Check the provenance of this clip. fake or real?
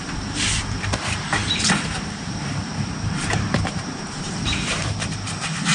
fake